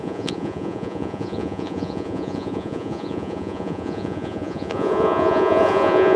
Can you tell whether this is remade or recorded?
remade